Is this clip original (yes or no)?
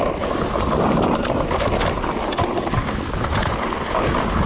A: yes